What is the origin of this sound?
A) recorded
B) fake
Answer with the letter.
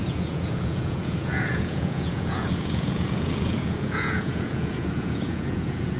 B